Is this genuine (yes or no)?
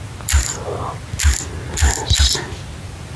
yes